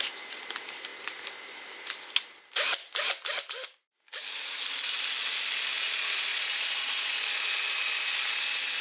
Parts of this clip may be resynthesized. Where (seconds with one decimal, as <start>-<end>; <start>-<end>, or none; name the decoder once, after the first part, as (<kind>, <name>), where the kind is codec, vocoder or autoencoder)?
6.3-7.1 (vocoder, Vocos)